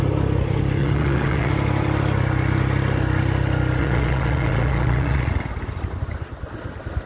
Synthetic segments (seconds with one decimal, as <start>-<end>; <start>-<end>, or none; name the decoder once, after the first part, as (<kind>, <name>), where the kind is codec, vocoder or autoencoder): 0.8-1.5 (vocoder, Vocos); 3.8-5.3